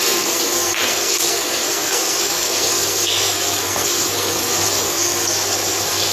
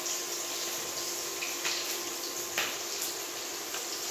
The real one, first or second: second